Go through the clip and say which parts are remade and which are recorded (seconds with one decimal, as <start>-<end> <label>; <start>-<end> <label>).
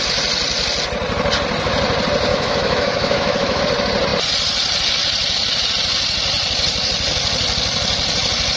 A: 0.0-2.3 recorded; 2.3-3.6 remade; 3.6-8.6 recorded